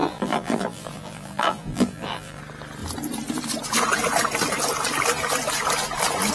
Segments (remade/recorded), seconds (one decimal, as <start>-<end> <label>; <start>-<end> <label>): 0.0-2.4 remade; 2.4-6.3 recorded